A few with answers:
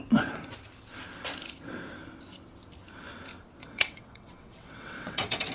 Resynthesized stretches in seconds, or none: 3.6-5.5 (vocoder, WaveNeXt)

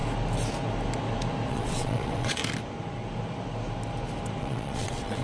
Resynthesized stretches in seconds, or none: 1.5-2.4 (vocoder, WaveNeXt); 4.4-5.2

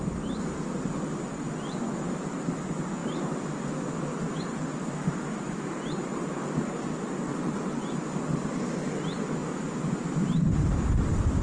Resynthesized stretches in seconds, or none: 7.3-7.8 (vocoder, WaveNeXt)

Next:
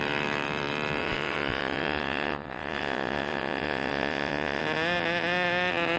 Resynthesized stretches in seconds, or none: 1.0-4.6 (vocoder, WaveNeXt)

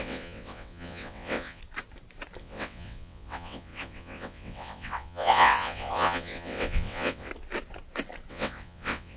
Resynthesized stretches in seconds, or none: 0.0-1.6 (vocoder, WaveNeXt); 2.4-7.3; 8.3-9.2

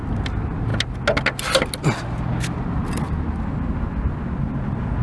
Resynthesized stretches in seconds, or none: none

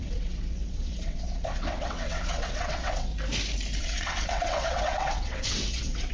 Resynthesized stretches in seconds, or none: 0.0-3.1 (vocoder, WaveNeXt); 3.8-6.1

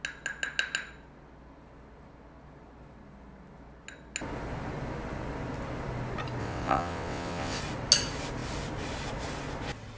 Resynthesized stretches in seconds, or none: 6.4-7.6 (vocoder, WaveNeXt)